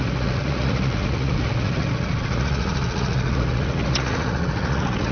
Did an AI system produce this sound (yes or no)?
yes